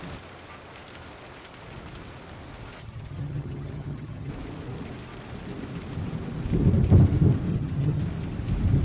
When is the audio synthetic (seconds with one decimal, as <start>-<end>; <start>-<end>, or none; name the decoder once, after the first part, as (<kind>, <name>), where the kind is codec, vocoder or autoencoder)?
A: 2.8-4.3 (vocoder, HiFi-GAN); 7.5-8.0

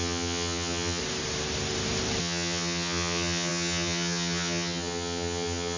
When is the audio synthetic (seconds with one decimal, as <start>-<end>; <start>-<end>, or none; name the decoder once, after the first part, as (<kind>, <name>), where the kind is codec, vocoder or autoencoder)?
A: 0.0-1.0 (vocoder, HiFi-GAN); 2.2-5.8